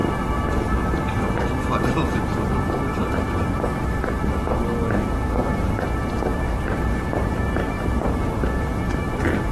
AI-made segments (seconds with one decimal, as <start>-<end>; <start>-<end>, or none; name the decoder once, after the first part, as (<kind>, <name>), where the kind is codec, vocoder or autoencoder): 2.9-4.3 (vocoder, BigVGAN v2); 6.3-8.2